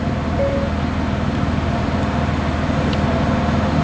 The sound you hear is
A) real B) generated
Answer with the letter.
A